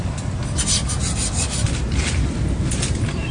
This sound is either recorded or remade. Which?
recorded